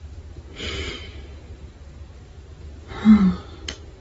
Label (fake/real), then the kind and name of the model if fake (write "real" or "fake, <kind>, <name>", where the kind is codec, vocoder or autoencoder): real